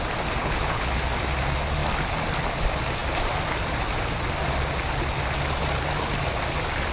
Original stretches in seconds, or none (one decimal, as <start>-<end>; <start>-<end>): 0.0-0.4; 0.9-6.9